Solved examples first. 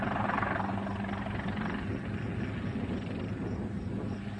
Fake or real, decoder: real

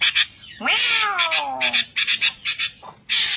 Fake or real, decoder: real